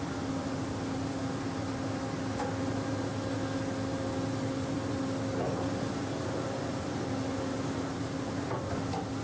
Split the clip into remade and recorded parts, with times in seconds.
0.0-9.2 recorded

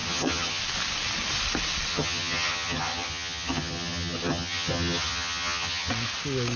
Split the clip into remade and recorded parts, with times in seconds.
0.0-0.6 remade; 0.6-1.9 recorded; 1.9-5.9 remade; 5.9-6.6 recorded

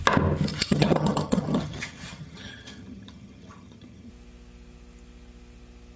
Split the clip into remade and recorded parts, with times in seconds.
0.0-0.5 recorded; 0.5-4.1 remade; 4.1-6.0 recorded

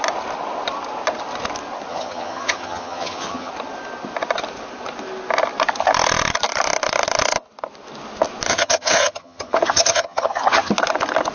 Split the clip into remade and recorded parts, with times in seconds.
0.0-1.9 recorded; 1.9-3.5 remade; 3.5-8.5 recorded; 8.5-10.7 remade; 10.7-11.3 recorded

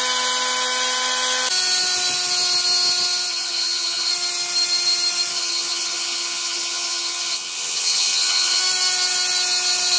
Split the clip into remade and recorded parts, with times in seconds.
0.0-3.3 recorded; 3.3-4.1 remade; 4.1-5.3 recorded; 5.3-8.6 remade; 8.6-10.0 recorded

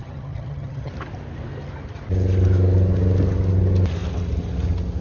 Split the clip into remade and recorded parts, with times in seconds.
0.0-0.9 remade; 0.9-5.0 recorded

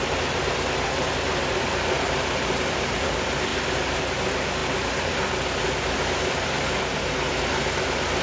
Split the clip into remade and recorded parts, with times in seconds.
0.0-8.2 recorded